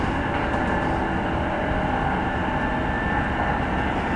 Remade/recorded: recorded